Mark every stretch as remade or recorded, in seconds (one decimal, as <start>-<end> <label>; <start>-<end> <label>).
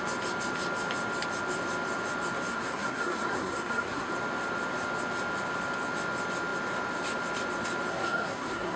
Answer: 0.0-2.5 recorded; 2.5-4.1 remade; 4.1-7.9 recorded; 7.9-8.8 remade